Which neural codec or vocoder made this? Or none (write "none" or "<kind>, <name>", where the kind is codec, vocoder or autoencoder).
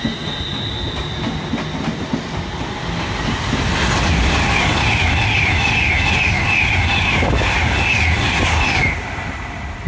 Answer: none